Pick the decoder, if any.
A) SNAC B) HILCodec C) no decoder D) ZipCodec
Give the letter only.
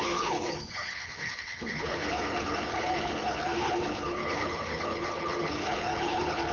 B